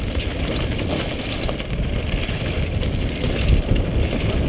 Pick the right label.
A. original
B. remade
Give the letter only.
A